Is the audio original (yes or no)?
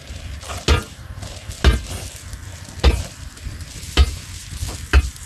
yes